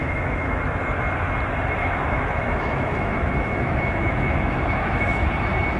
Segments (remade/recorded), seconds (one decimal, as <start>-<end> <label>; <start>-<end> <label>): 0.0-0.6 remade; 0.6-1.8 recorded; 1.8-5.3 remade; 5.3-5.8 recorded